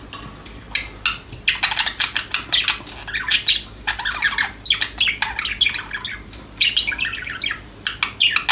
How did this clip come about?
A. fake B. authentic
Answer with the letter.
B